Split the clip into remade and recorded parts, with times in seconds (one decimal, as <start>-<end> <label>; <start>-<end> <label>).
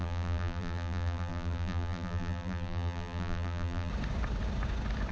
0.0-3.9 remade; 3.9-5.1 recorded